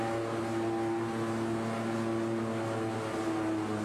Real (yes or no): yes